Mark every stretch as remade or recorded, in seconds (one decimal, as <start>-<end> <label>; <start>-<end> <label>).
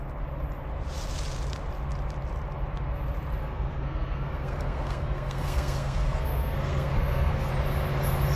0.0-3.4 recorded; 3.4-7.5 remade; 7.5-8.4 recorded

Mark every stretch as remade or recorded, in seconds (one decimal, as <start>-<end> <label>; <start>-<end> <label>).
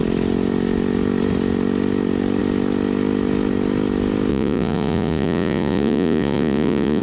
0.0-4.3 recorded; 4.3-7.0 remade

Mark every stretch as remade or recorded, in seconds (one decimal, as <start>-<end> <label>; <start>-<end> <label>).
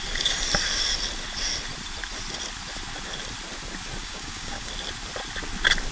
0.0-4.0 recorded; 4.0-4.7 remade; 4.7-5.9 recorded